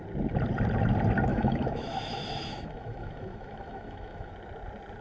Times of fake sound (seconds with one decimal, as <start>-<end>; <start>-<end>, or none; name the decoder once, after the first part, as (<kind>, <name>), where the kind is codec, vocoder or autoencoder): 1.3-4.3 (autoencoder, DAC-VAE)